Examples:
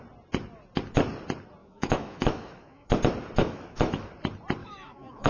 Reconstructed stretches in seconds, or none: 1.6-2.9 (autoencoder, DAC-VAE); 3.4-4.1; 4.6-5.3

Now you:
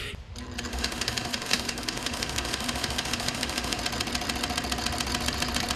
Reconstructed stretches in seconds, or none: 0.7-3.8 (autoencoder, DAC-VAE)

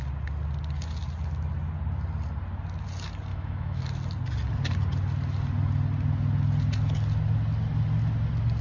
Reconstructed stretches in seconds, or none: 3.3-3.8 (autoencoder, DAC-VAE)

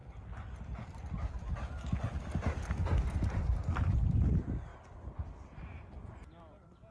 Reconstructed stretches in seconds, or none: none

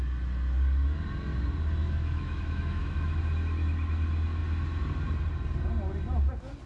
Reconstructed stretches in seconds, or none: 1.8-3.2 (autoencoder, DAC-VAE)

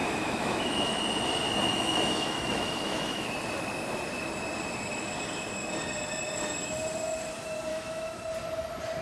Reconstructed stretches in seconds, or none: 0.0-1.0 (autoencoder, DAC-VAE); 1.7-3.3; 7.7-8.2

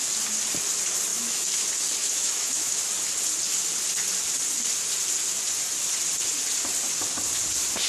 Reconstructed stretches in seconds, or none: 1.1-1.6 (autoencoder, DAC-VAE); 2.0-2.8